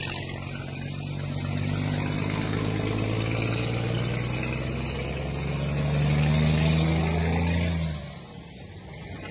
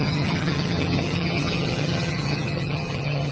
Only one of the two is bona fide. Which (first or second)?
first